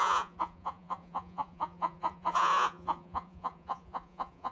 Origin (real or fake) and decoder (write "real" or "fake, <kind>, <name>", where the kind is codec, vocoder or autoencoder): fake, vocoder, Vocos